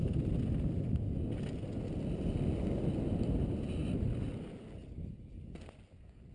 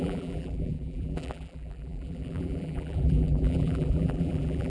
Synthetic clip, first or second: second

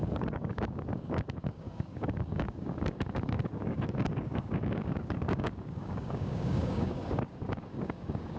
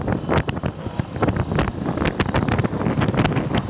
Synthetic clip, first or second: first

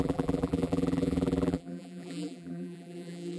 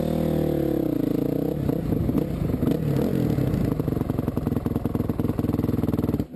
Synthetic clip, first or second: first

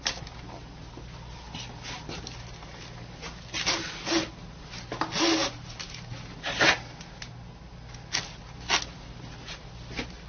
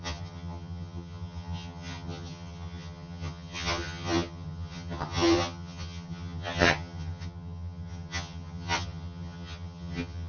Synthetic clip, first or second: second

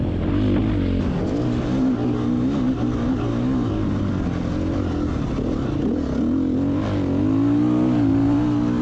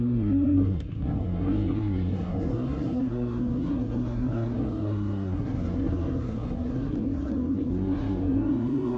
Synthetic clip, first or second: second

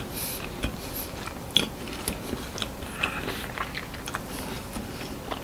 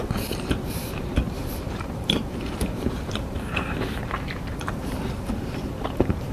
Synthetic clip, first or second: second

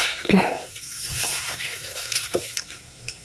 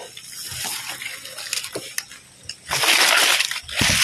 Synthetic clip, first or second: first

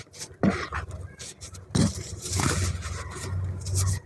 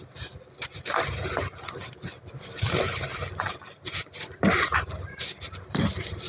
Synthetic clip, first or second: second